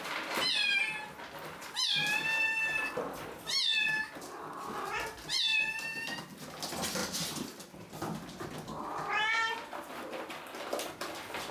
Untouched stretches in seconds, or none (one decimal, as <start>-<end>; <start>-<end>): 0.0-11.5